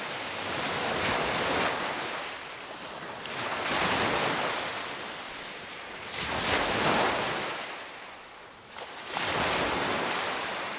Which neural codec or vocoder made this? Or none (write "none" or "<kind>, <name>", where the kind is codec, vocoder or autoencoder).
none